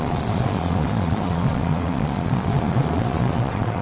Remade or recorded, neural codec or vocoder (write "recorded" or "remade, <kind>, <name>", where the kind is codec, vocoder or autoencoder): remade, vocoder, Vocos